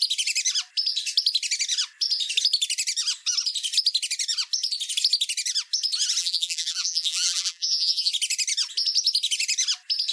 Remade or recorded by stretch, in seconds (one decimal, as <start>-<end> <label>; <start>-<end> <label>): 0.0-6.2 recorded; 6.2-8.1 remade; 8.1-10.1 recorded